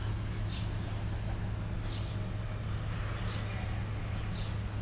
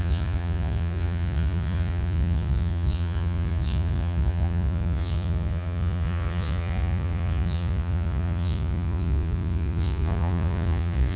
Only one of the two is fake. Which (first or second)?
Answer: second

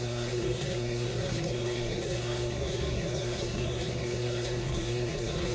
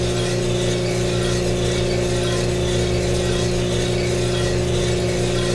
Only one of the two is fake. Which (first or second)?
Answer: first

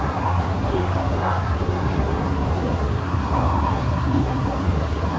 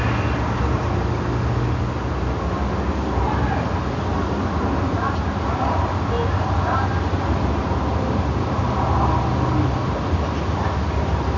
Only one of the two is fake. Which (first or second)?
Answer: first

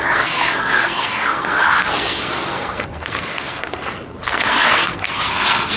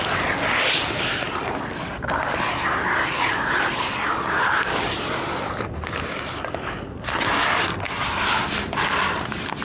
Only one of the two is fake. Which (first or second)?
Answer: first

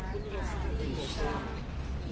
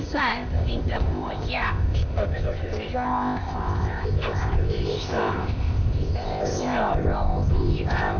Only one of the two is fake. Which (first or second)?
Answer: second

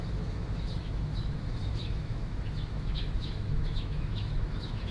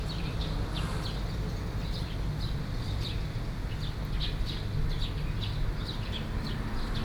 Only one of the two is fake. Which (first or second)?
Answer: first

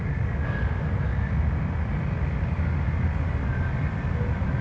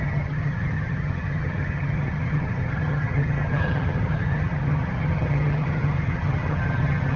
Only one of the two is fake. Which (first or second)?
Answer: second